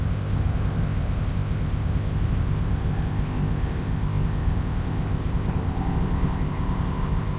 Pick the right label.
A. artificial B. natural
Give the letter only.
A